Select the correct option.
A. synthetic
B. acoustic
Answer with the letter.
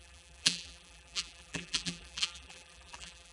A